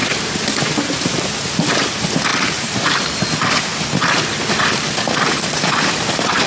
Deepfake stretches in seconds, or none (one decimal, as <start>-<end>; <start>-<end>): 0.0-1.2; 2.3-3.2